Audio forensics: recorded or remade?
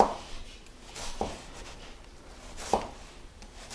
recorded